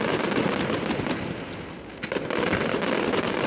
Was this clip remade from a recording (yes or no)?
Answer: no